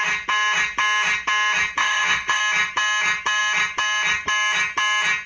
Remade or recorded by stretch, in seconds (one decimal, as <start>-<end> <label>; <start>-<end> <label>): 0.0-1.8 recorded; 1.8-2.4 remade; 2.4-5.3 recorded

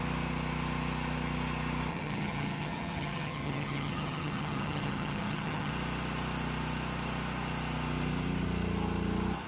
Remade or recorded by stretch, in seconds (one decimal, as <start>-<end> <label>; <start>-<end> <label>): 0.0-1.9 recorded; 1.9-5.7 remade; 5.7-9.5 recorded

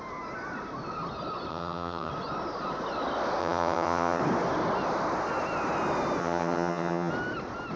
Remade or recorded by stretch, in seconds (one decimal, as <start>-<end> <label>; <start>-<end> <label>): 0.0-1.5 recorded; 1.5-2.1 remade; 2.1-3.4 recorded; 3.4-4.2 remade; 4.2-6.2 recorded; 6.2-7.1 remade; 7.1-7.8 recorded

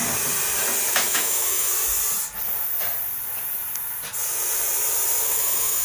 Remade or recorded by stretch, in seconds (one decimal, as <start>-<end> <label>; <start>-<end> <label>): 0.0-0.9 recorded; 0.9-1.7 remade; 1.7-5.2 recorded; 5.2-5.8 remade

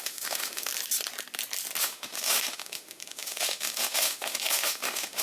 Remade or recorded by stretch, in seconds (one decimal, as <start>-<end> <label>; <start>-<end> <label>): 0.0-0.7 remade; 0.7-1.8 recorded; 1.8-5.2 remade

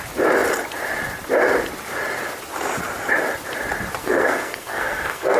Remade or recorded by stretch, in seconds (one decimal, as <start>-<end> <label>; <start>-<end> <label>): 0.0-4.0 recorded; 4.0-5.4 remade